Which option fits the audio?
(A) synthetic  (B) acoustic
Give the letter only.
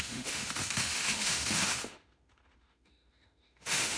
A